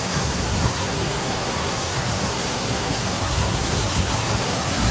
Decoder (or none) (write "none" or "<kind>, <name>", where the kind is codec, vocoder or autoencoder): codec, SNAC